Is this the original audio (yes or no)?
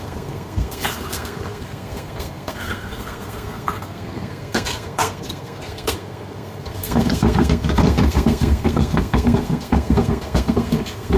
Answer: no